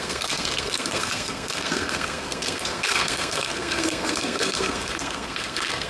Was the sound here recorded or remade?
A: remade